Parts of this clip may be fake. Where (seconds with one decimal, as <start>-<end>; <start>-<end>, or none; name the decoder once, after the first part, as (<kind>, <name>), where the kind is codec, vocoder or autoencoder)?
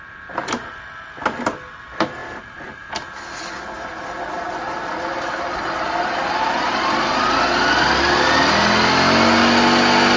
none